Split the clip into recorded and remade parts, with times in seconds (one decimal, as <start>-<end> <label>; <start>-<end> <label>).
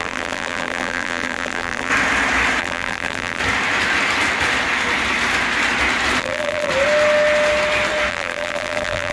0.0-1.9 remade; 1.9-2.6 recorded; 2.6-3.4 remade; 3.4-6.2 recorded; 6.2-6.7 remade; 6.7-8.1 recorded; 8.1-9.1 remade